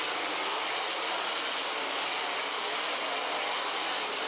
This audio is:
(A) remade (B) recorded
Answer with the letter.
B